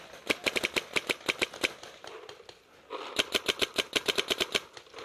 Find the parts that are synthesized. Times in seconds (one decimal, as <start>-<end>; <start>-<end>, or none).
none